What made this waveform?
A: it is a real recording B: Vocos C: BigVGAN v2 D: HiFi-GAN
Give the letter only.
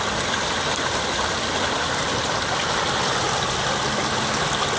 A